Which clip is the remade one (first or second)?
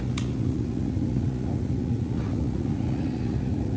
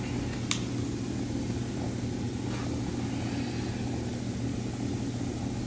first